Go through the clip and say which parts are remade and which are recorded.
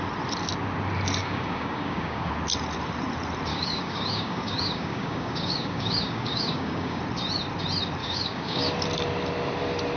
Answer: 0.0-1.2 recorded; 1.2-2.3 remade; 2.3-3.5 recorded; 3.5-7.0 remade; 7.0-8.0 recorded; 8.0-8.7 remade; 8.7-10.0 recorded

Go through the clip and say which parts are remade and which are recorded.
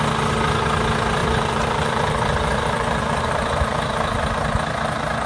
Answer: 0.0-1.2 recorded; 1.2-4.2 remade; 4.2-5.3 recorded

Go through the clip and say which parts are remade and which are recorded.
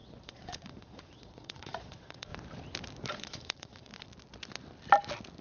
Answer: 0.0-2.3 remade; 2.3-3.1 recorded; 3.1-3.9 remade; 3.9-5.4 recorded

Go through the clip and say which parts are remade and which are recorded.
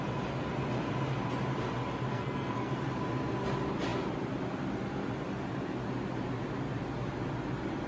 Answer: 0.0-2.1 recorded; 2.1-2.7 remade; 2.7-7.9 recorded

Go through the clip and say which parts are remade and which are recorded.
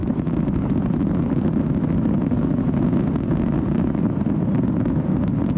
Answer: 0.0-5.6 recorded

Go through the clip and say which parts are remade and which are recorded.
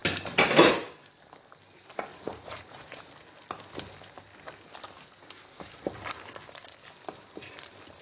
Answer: 0.0-2.1 recorded; 2.1-3.1 remade; 3.1-8.0 recorded